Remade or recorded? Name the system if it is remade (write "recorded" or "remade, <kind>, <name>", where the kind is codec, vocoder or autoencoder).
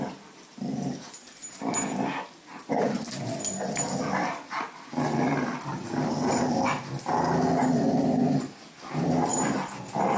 recorded